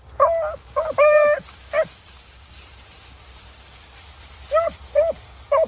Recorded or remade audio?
recorded